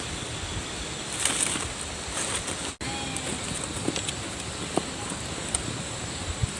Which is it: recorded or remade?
recorded